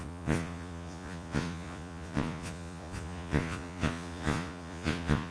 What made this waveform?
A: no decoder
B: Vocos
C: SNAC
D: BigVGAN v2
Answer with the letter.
B